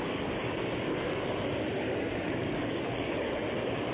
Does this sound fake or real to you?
fake